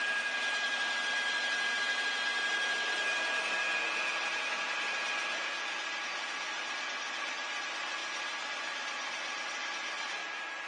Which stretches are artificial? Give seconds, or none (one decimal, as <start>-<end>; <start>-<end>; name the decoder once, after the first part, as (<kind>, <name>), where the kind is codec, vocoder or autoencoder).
none